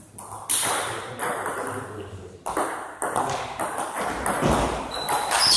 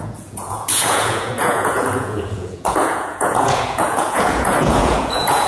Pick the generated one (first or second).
second